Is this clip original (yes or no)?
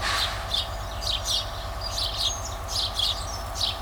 yes